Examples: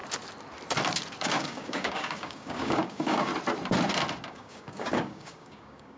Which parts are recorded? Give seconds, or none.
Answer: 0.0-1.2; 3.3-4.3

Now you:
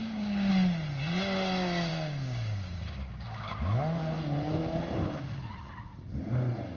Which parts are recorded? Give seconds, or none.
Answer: 0.5-1.9; 3.6-6.8

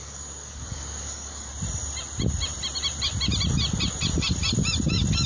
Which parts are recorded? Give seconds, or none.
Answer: 1.5-5.3

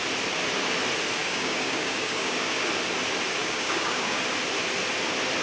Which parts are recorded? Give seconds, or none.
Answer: 0.0-1.2; 2.7-3.4; 4.2-5.4